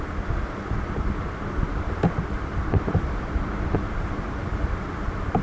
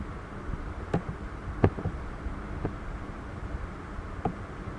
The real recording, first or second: second